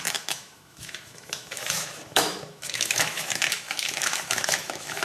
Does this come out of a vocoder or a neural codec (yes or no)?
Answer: yes